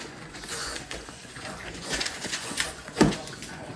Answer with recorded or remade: remade